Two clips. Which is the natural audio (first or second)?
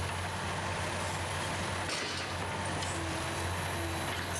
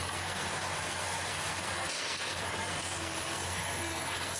first